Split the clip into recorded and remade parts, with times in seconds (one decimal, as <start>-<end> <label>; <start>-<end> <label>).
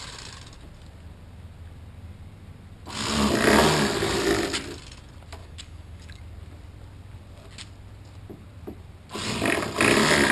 0.0-5.4 recorded; 5.4-6.2 remade; 6.2-10.3 recorded